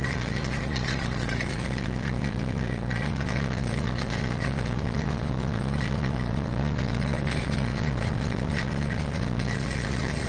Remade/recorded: remade